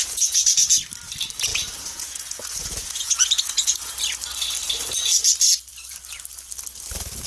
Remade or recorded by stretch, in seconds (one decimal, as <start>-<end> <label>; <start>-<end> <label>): 0.0-0.5 remade; 0.5-1.5 recorded; 1.5-3.9 remade; 3.9-7.3 recorded